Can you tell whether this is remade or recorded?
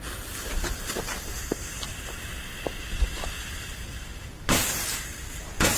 recorded